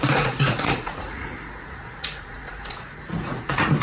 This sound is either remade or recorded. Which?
remade